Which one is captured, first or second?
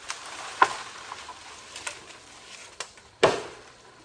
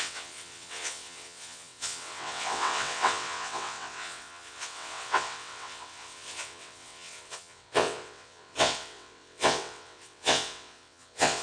first